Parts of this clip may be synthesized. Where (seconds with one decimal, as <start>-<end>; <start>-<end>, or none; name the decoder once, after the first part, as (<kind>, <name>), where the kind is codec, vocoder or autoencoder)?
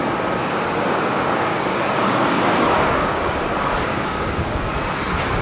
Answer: 0.4-3.4 (codec, DAC); 3.9-4.7